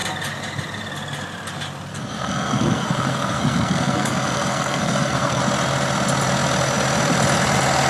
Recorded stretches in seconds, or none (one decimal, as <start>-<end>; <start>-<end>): 0.0-1.9; 5.4-7.9